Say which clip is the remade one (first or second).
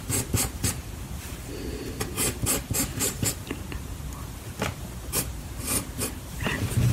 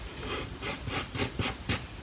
first